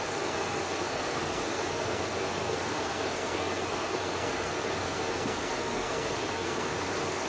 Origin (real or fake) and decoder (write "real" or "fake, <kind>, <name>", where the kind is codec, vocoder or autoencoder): fake, codec, SNAC